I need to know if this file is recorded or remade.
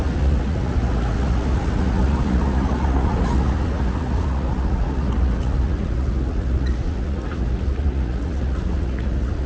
remade